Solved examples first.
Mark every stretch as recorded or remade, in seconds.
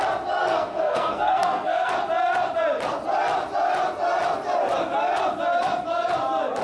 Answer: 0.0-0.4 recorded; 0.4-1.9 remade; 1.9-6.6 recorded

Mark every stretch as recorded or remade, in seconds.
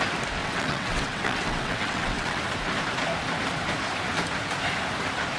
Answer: 0.0-0.4 recorded; 0.4-2.4 remade; 2.4-5.4 recorded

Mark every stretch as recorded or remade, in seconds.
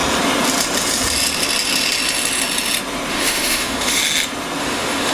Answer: 0.0-3.1 recorded; 3.1-4.0 remade; 4.0-4.6 recorded; 4.6-5.1 remade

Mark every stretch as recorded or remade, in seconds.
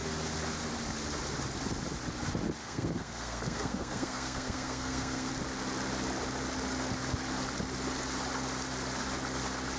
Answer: 0.0-2.6 recorded; 2.6-5.3 remade; 5.3-9.8 recorded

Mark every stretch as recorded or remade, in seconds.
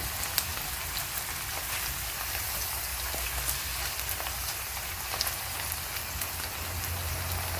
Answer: 0.0-7.6 recorded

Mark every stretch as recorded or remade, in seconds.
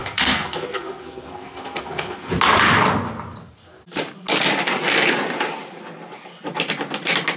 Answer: 0.0-2.3 remade; 2.3-7.4 recorded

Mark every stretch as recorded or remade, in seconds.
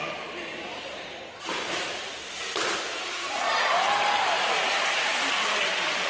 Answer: 0.0-2.1 remade; 2.1-2.8 recorded; 2.8-6.1 remade